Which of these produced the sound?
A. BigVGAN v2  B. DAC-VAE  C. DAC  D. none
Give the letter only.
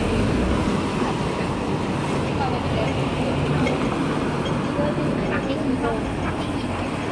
D